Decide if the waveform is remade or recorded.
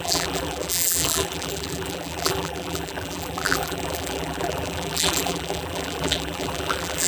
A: remade